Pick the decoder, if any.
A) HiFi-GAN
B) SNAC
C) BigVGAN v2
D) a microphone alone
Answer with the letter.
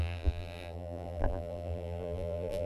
C